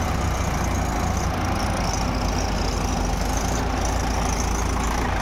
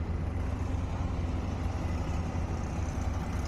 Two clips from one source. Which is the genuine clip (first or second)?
first